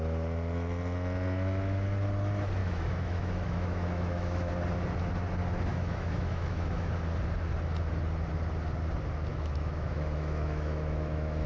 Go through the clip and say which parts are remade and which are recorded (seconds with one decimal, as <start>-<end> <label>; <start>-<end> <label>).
0.0-2.6 recorded; 2.6-4.5 remade; 4.5-5.7 recorded; 5.7-6.9 remade; 6.9-9.3 recorded; 9.3-11.5 remade